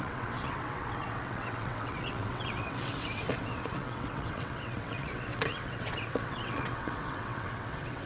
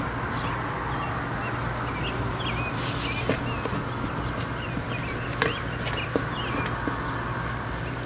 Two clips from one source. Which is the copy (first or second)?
first